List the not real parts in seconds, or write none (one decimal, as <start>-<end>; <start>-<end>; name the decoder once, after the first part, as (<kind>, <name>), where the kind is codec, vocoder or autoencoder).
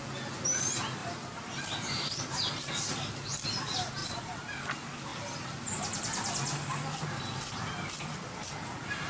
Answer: 1.0-2.7 (vocoder, BigVGAN v2); 4.0-4.6